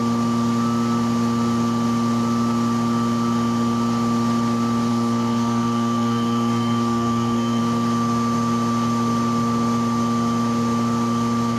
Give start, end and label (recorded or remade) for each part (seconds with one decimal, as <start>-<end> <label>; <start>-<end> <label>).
0.0-4.9 recorded; 4.9-7.6 remade; 7.6-11.6 recorded